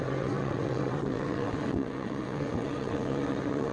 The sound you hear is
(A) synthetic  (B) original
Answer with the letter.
A